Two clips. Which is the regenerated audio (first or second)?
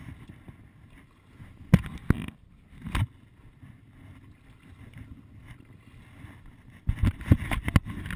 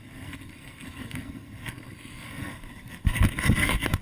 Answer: second